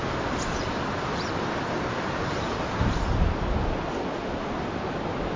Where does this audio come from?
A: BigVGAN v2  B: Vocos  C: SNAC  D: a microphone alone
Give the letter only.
D